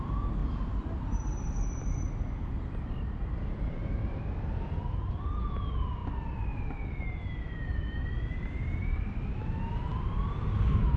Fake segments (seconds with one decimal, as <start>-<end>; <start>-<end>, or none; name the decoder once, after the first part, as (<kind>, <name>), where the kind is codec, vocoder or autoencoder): 0.4-5.2 (vocoder, BigVGAN v2); 6.0-6.6; 8.8-9.4